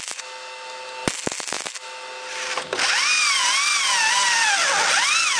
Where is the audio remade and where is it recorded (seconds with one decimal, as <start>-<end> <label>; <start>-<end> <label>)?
0.0-5.4 recorded